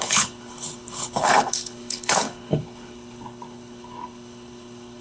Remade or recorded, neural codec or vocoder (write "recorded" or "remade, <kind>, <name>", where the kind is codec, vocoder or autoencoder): remade, codec, HILCodec